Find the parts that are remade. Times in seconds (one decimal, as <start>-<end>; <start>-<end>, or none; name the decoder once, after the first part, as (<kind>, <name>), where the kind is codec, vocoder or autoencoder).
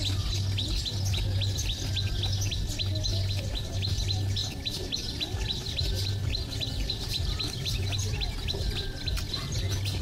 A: none